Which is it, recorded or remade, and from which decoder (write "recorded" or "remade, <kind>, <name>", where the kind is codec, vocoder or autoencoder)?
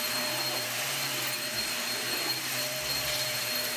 remade, vocoder, BigVGAN v2